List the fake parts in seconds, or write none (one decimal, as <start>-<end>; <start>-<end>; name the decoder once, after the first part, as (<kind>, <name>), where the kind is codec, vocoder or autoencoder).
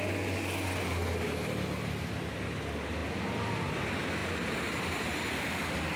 none